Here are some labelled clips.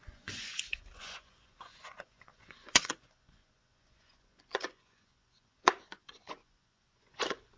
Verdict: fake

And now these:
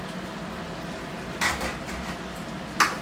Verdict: real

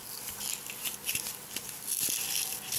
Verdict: real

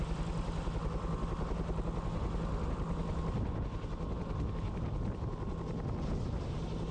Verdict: real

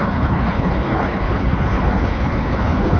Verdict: fake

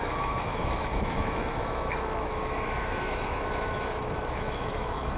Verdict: fake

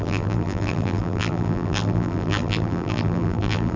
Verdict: fake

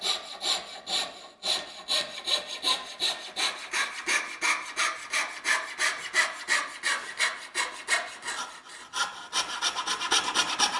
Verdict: real